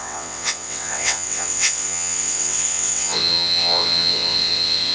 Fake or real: fake